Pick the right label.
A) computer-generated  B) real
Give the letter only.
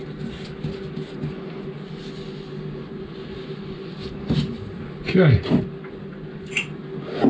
B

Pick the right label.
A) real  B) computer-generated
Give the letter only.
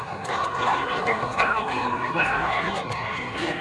B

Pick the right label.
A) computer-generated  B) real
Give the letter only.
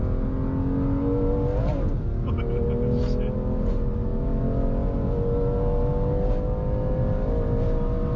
B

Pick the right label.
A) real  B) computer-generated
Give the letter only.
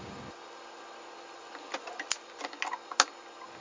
A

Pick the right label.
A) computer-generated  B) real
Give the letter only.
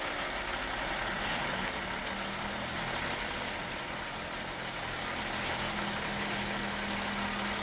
B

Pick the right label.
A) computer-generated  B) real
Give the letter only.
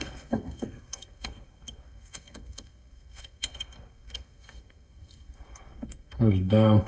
A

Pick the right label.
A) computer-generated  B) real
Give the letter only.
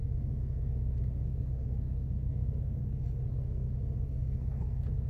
A